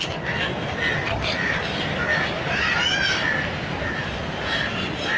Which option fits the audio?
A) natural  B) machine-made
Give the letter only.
A